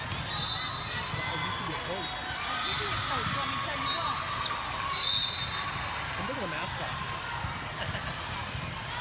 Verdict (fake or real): real